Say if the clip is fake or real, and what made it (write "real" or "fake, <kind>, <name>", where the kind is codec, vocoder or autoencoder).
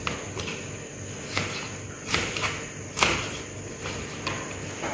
real